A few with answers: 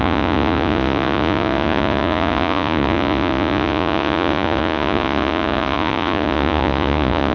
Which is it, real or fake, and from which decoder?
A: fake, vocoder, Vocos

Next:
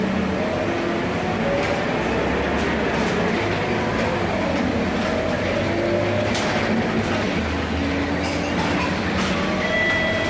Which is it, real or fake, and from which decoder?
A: real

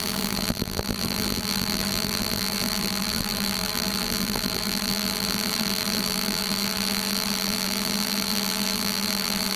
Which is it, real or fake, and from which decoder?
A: fake, vocoder, BigVGAN v2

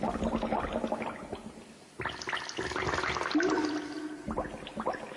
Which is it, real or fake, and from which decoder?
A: real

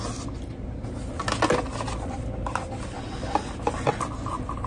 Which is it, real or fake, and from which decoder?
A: real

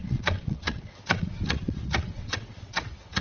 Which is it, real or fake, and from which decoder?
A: fake, vocoder, WaveNeXt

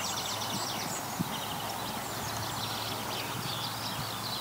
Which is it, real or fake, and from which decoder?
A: real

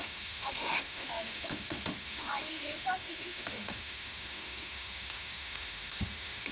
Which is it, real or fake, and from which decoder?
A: fake, autoencoder, DAC-VAE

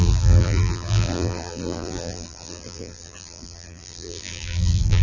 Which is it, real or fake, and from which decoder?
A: fake, vocoder, BigVGAN v2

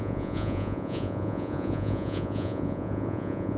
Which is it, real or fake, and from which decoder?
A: fake, vocoder, Vocos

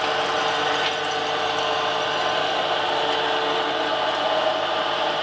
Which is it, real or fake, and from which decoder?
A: real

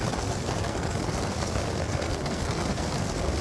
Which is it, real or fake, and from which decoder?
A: fake, codec, SNAC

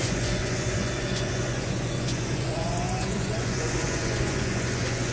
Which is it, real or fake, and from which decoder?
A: fake, vocoder, Vocos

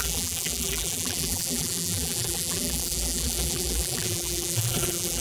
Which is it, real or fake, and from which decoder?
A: fake, vocoder, BigVGAN v2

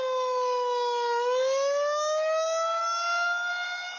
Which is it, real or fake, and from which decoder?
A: fake, autoencoder, DAC-VAE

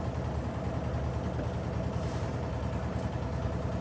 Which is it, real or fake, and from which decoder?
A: real